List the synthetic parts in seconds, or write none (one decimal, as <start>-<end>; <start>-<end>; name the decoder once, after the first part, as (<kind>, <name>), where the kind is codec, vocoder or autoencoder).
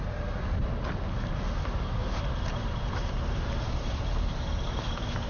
2.0-5.3 (vocoder, BigVGAN v2)